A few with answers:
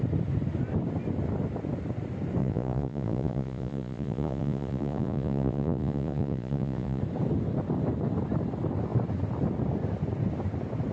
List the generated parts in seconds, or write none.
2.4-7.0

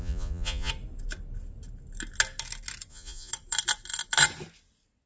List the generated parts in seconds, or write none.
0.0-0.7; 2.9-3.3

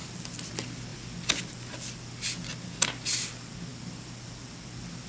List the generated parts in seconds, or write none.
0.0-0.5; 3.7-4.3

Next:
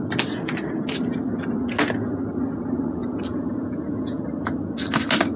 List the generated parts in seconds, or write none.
3.0-4.2